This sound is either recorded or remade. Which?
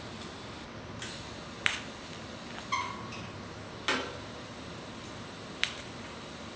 recorded